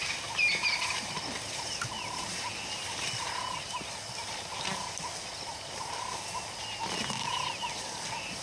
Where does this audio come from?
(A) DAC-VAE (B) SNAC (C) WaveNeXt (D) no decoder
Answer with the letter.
D